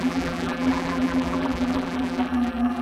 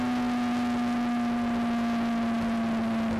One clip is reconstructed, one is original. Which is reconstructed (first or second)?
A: first